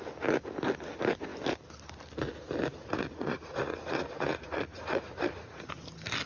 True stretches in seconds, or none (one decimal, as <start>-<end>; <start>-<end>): 0.0-2.8; 5.7-6.3